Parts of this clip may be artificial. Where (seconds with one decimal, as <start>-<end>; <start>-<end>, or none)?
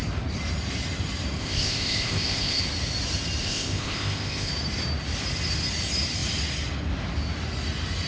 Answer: 1.4-2.6; 3.4-4.5